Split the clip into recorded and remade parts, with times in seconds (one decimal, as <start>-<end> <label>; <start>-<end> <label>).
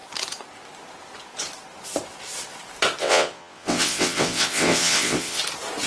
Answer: 0.0-3.0 recorded; 3.0-5.4 remade; 5.4-5.9 recorded